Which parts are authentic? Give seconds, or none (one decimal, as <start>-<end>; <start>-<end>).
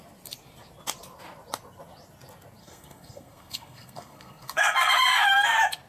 0.0-2.6; 4.9-5.9